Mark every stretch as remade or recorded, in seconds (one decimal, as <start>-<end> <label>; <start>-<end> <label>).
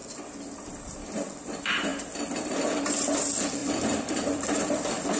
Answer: 0.0-3.6 recorded; 3.6-4.4 remade; 4.4-5.2 recorded